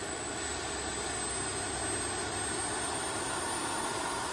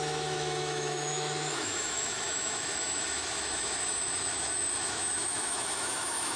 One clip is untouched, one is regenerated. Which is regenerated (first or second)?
second